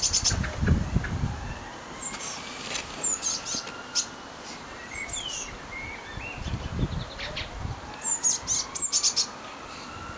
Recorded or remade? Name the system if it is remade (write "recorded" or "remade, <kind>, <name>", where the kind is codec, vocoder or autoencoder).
recorded